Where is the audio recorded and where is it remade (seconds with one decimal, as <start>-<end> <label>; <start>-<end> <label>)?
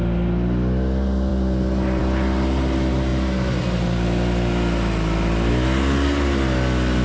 0.0-7.0 recorded